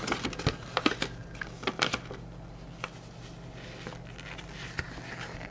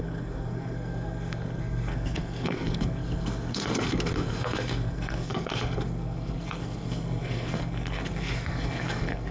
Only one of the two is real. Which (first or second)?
first